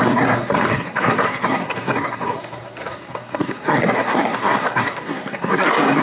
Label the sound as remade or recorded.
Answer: remade